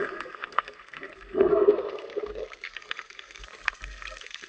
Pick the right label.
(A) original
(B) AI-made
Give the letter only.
B